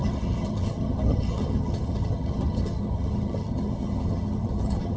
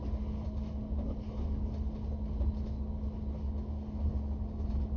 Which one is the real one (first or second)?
second